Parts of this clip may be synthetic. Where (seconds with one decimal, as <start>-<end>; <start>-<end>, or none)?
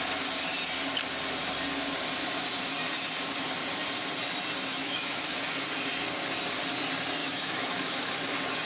4.7-5.4; 7.2-8.1